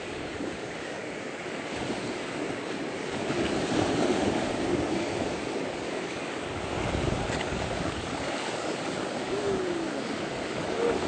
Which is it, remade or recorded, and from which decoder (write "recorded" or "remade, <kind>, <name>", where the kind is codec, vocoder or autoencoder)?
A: remade, codec, DAC